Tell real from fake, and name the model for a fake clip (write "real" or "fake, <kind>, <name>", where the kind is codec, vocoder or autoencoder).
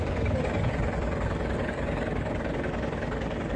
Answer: fake, codec, DAC